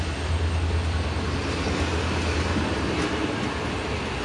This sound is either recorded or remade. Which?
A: recorded